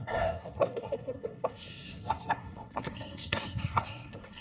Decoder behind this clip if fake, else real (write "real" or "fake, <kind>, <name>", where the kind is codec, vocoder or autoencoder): fake, codec, SNAC